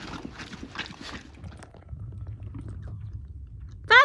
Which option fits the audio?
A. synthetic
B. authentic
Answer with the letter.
B